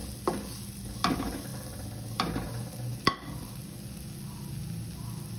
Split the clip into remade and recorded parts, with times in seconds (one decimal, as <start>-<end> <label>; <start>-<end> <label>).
0.0-5.4 recorded